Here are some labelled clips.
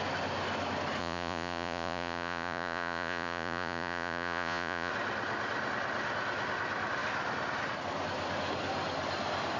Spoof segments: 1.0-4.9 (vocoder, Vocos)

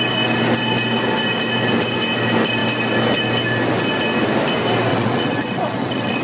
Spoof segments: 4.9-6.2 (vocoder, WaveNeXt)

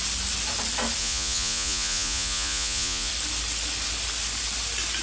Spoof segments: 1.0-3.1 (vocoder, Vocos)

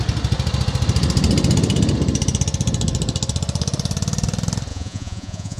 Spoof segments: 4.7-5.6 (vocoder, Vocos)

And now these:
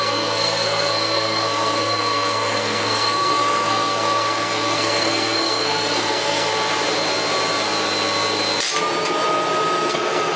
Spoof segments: 0.0-6.5 (codec, SNAC); 9.9-10.4

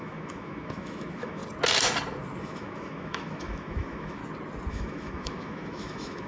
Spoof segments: 0.0-1.4 (autoencoder, DAC-VAE); 2.4-4.2; 4.7-6.3